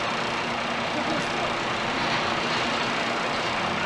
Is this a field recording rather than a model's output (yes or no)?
yes